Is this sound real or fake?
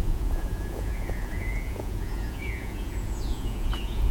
fake